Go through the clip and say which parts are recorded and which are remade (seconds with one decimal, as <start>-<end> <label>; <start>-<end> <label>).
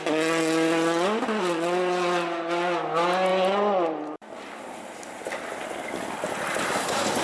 0.0-7.2 recorded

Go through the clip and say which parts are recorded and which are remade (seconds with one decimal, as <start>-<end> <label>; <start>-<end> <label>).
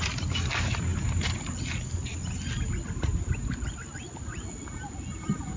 0.0-5.6 recorded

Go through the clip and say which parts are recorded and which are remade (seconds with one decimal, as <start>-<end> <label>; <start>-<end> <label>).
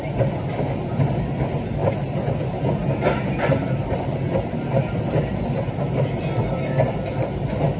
0.0-7.8 recorded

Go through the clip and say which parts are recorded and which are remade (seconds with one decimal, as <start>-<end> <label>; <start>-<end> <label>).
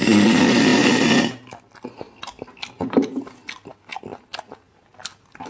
0.0-5.5 recorded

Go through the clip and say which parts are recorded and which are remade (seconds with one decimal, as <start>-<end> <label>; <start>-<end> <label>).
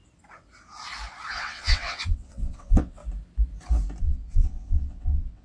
0.0-1.3 recorded; 1.3-3.0 remade; 3.0-4.0 recorded; 4.0-5.4 remade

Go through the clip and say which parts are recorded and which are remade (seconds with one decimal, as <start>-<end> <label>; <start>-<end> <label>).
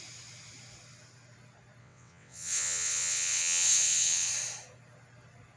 0.0-1.8 recorded; 1.8-4.3 remade; 4.3-5.6 recorded